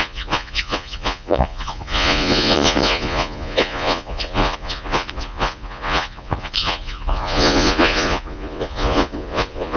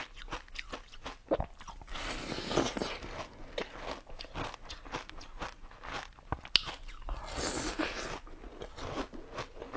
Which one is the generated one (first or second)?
first